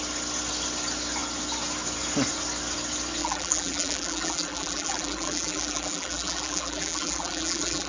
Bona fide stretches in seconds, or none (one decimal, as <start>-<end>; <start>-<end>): 0.0-3.2